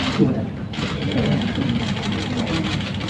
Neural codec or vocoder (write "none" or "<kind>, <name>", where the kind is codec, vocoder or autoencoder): none